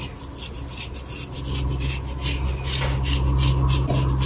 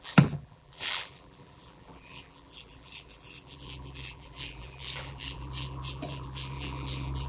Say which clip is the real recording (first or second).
first